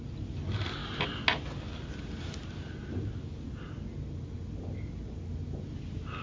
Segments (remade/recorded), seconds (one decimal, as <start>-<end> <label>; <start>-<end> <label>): 0.0-6.2 recorded